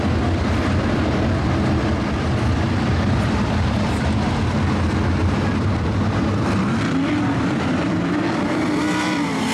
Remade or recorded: remade